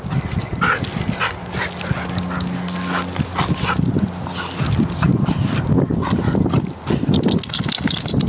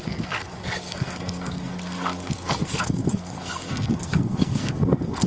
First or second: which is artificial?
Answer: second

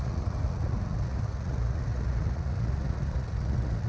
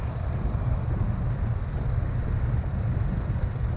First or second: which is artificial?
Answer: first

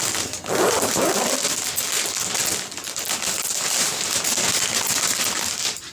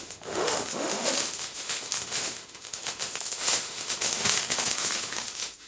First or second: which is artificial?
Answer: second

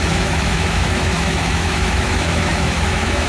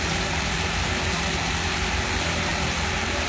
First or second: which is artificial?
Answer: first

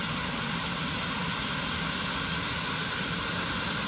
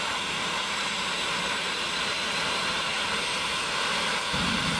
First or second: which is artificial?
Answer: second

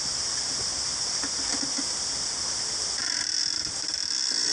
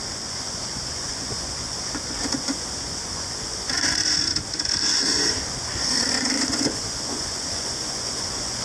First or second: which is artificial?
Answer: second